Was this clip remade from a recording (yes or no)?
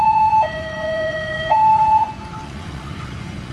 yes